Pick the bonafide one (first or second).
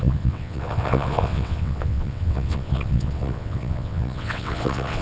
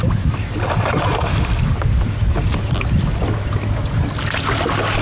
second